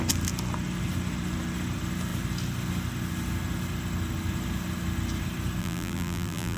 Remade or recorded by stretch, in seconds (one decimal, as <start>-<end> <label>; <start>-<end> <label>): 0.0-5.6 recorded; 5.6-6.6 remade